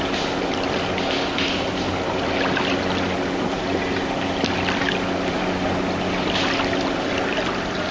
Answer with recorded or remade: recorded